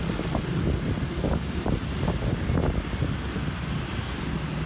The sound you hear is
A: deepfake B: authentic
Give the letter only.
B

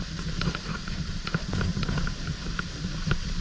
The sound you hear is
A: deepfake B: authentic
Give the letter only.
A